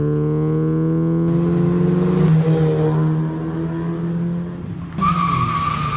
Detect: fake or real real